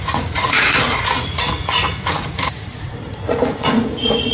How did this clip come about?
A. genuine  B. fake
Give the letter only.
B